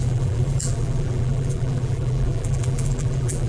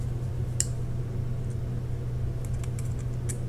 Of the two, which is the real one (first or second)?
second